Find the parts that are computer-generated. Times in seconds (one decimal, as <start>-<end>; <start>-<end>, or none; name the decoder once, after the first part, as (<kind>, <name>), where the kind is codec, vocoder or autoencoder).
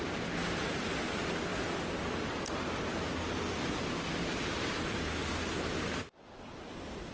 none